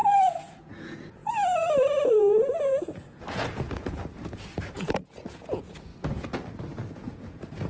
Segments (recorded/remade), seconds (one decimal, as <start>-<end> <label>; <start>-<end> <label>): 0.0-5.9 remade; 5.9-6.9 recorded; 6.9-7.7 remade